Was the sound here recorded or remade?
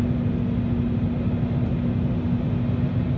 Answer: recorded